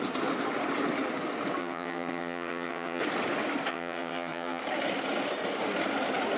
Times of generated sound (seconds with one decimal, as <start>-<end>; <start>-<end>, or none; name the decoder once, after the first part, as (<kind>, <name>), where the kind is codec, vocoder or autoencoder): 1.6-3.0 (vocoder, HiFi-GAN); 3.7-4.6